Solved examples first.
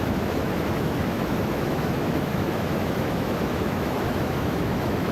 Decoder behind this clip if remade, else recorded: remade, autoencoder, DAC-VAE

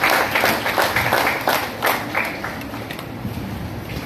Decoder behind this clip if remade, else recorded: recorded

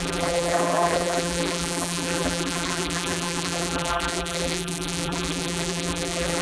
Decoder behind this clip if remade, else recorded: remade, vocoder, BigVGAN v2